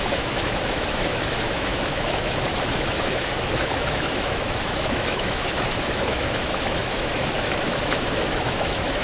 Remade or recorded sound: remade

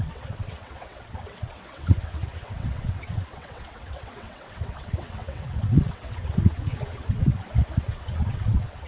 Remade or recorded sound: remade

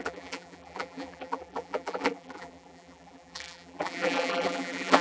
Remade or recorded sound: remade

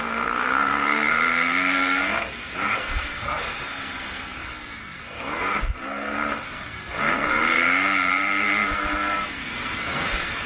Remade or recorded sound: remade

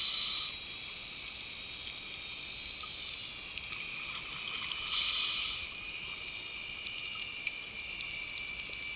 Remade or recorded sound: recorded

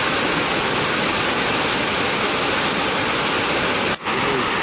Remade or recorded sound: recorded